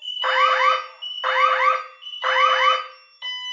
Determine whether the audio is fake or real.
real